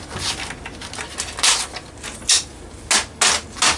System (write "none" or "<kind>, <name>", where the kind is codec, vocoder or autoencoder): none